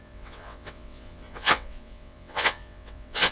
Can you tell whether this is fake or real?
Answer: fake